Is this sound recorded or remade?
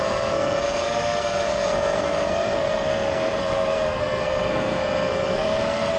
remade